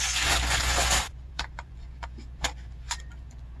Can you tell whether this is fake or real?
fake